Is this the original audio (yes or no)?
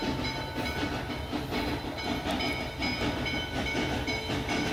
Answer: yes